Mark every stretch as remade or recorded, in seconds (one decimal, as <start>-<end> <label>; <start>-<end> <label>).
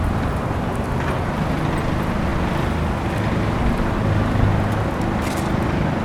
0.0-6.0 recorded